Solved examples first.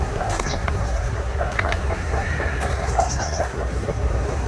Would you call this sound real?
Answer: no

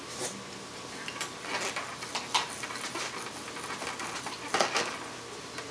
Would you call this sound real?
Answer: yes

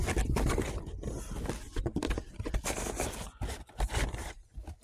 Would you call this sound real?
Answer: yes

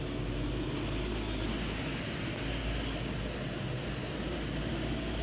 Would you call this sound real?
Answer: yes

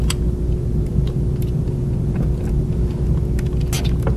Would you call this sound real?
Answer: yes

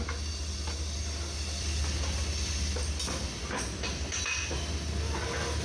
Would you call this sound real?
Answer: yes